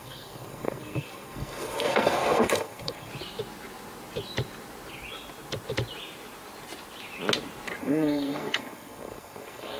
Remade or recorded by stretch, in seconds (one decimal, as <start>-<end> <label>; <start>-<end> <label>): 0.0-3.1 remade; 3.1-7.8 recorded; 7.8-9.8 remade